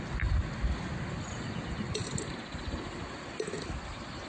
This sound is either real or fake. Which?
real